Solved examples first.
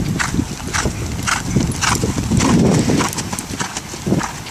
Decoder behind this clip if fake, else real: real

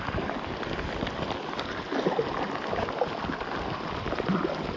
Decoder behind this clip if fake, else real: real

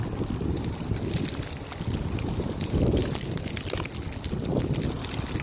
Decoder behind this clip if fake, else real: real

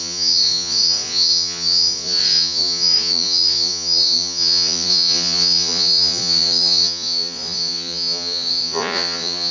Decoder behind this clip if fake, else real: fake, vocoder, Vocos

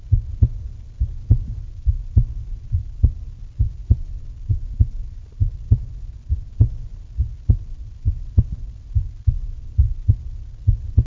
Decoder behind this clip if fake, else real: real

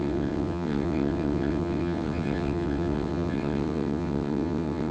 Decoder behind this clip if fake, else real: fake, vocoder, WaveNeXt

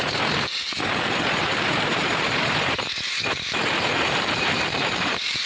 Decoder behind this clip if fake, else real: fake, vocoder, BigVGAN v2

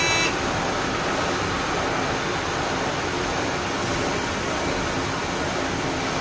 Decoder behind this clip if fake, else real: real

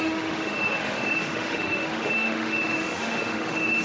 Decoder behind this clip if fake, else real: fake, autoencoder, DAC-VAE